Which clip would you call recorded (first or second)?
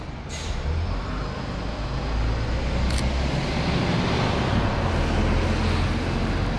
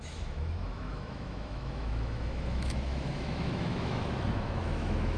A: first